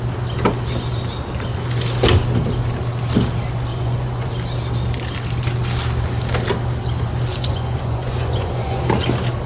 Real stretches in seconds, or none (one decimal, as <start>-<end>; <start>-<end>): 0.0-3.7; 4.3-7.3; 8.8-9.5